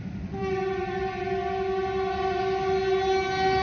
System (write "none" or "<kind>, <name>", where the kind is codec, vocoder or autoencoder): none